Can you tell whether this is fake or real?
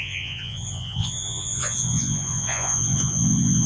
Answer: fake